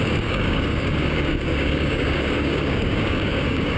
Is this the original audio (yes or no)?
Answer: no